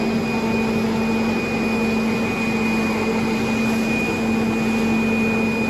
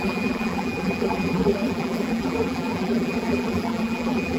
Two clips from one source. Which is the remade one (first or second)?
second